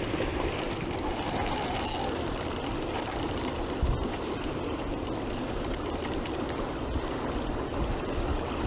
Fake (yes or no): no